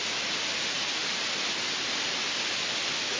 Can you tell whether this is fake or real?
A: real